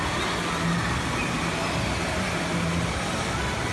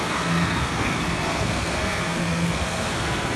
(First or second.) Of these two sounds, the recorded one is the first